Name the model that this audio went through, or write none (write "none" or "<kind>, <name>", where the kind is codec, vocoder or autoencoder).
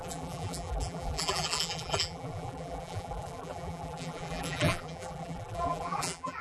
vocoder, BigVGAN v2